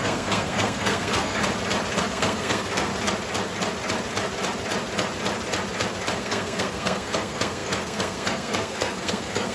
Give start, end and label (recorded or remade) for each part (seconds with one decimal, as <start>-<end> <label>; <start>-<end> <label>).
0.0-1.4 remade; 1.4-2.0 recorded; 2.0-2.9 remade; 2.9-6.2 recorded; 6.2-9.5 remade